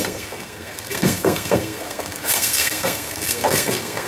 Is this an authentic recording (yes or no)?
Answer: no